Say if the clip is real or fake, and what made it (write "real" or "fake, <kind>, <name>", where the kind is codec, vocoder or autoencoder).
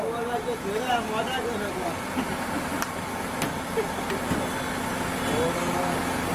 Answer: real